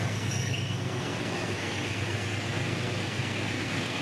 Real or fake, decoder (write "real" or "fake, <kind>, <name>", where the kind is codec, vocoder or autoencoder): fake, codec, SNAC